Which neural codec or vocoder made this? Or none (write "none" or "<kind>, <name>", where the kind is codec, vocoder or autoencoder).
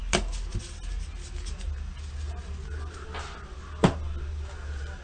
none